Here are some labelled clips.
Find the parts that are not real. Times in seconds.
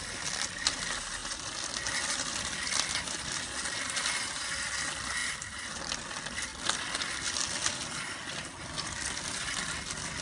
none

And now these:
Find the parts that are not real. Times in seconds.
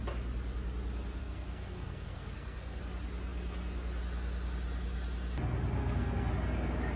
1.2-2.8; 5.8-6.3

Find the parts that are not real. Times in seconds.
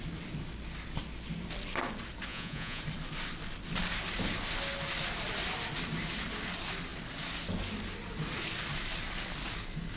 2.3-2.8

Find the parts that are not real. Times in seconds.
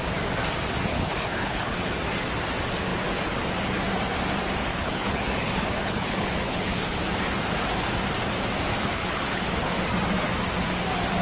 0.9-1.9; 4.7-7.0; 8.7-9.7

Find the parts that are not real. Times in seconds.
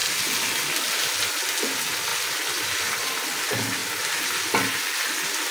none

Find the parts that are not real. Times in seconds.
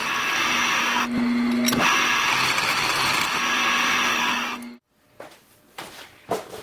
4.1-4.9